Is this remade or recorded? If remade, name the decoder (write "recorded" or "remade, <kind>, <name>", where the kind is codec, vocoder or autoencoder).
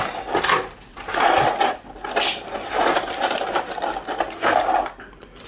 recorded